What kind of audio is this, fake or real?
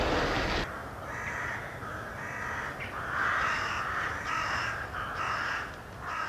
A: real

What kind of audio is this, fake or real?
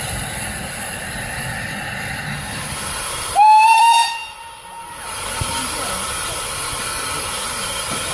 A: real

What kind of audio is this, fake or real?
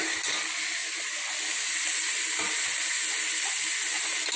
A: real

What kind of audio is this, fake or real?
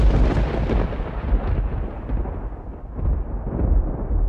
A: real